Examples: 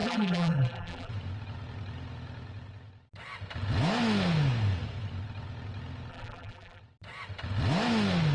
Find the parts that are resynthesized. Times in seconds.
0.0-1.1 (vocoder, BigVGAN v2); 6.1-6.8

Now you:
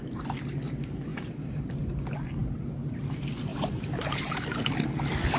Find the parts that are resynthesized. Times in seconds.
1.1-1.7 (vocoder, BigVGAN v2); 3.5-4.5

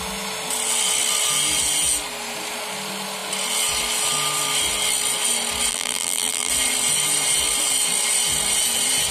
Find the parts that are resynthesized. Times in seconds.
5.7-6.5 (vocoder, BigVGAN v2)

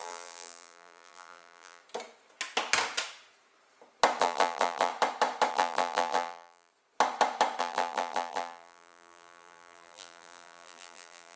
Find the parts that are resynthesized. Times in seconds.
0.0-1.8 (vocoder, BigVGAN v2); 4.2-4.9; 5.5-6.7; 7.6-11.4